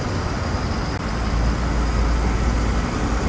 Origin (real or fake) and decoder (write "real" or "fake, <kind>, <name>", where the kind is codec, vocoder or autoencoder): real